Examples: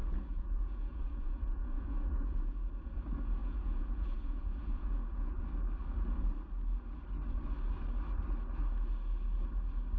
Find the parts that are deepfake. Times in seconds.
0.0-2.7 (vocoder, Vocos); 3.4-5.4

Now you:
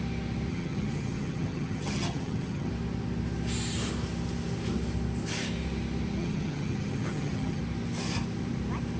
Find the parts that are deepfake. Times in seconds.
0.5-2.7 (vocoder, HiFi-GAN); 6.2-7.6

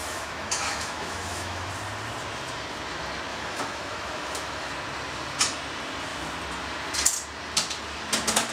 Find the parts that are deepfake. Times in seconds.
0.0-1.7 (autoencoder, DAC-VAE); 3.3-4.7

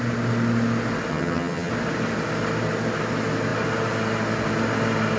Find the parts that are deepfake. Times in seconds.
1.1-1.7 (vocoder, HiFi-GAN)

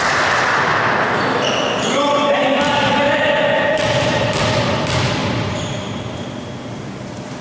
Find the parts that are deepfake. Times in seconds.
0.0-0.7 (vocoder, BigVGAN v2); 1.5-7.4

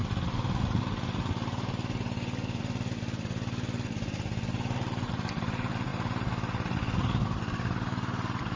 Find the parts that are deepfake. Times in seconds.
none